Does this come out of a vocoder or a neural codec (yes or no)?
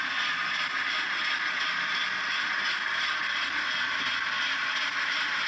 no